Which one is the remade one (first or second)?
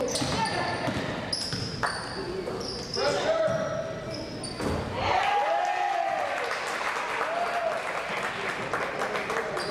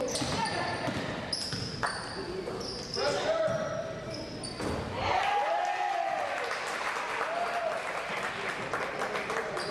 second